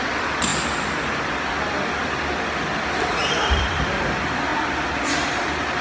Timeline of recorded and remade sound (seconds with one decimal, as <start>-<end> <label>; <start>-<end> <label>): 0.0-5.8 recorded